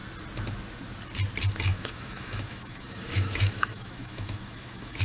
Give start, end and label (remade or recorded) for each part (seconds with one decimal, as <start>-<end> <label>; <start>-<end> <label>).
0.0-1.7 recorded; 1.7-5.0 remade